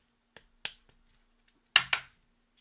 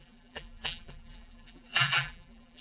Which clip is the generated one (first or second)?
second